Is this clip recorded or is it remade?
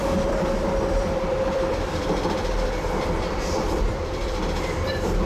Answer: remade